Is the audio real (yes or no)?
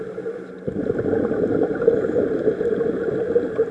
yes